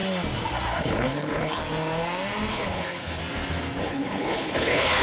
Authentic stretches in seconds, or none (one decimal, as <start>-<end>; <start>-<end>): 0.0-0.8; 1.6-2.5; 3.2-3.8